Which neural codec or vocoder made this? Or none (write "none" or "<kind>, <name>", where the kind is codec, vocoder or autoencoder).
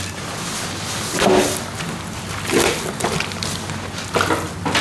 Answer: none